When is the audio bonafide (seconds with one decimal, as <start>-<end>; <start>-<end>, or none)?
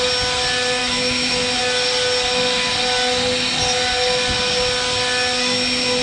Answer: 0.0-0.8; 1.6-6.0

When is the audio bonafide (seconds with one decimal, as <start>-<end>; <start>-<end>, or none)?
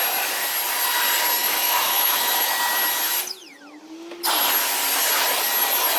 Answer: 0.0-1.4; 2.5-6.0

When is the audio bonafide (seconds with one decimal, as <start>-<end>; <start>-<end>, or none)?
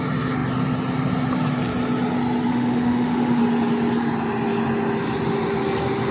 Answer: 0.0-2.5; 3.4-6.1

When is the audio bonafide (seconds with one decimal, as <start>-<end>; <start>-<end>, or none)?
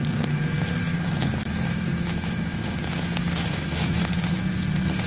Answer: 0.0-0.9; 4.0-5.1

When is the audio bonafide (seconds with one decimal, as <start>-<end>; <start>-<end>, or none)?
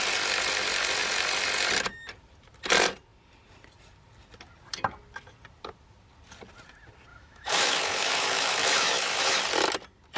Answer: 0.0-7.1; 9.4-10.2